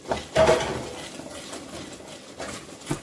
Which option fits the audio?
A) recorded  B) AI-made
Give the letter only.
A